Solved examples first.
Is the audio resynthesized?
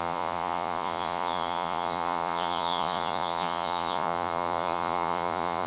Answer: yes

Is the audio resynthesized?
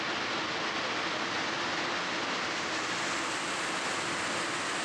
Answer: no